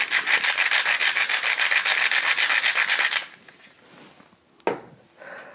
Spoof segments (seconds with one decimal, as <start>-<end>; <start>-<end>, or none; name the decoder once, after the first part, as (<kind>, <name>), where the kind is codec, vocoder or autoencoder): none